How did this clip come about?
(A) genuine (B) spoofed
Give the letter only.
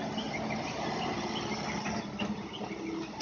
A